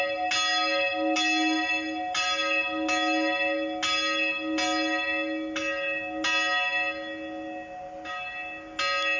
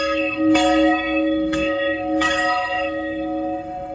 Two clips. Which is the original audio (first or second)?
first